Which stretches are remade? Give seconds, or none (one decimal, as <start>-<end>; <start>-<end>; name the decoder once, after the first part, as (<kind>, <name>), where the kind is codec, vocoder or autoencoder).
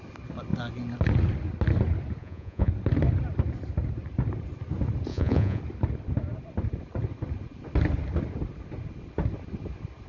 2.2-2.7 (vocoder, Vocos); 5.1-5.6